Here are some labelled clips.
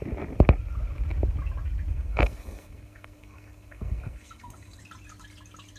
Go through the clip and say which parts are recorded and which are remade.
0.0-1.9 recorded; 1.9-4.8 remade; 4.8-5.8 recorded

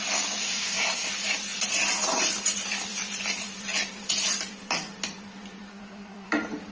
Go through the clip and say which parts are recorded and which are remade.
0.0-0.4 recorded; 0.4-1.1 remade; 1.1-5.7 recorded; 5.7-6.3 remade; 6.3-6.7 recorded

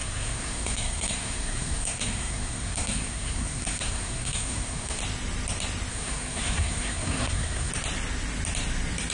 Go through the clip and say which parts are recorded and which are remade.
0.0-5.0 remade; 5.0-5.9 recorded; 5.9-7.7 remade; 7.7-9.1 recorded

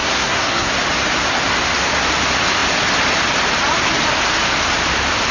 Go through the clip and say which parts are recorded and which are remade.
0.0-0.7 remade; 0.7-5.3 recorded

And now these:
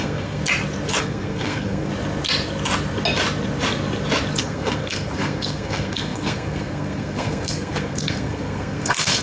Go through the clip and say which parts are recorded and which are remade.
0.0-0.4 remade; 0.4-1.0 recorded; 1.0-1.9 remade; 1.9-4.4 recorded; 4.4-9.2 remade

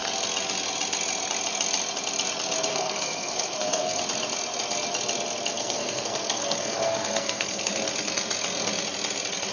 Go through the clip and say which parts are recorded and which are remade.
0.0-2.7 recorded; 2.7-4.0 remade; 4.0-5.5 recorded; 5.5-7.7 remade; 7.7-9.5 recorded